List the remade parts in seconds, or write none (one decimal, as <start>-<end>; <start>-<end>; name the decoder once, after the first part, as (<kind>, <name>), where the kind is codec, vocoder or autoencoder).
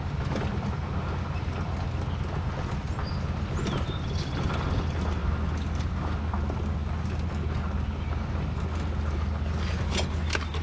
none